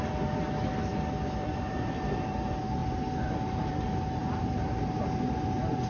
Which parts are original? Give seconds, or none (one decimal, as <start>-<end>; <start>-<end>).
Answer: 0.0-1.4; 2.2-4.2; 4.9-5.9